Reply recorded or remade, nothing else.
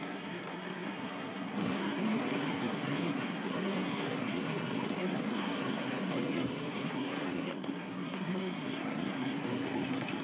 remade